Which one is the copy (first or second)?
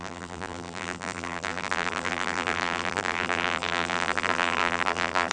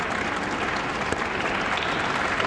first